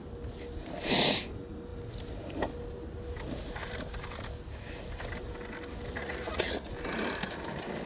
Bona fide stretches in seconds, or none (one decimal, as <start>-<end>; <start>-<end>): 0.0-6.0; 6.7-7.9